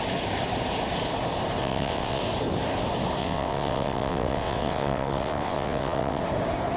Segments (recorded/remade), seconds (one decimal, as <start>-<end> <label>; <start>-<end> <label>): 0.0-1.6 recorded; 1.6-2.2 remade; 2.2-3.2 recorded; 3.2-6.2 remade; 6.2-6.8 recorded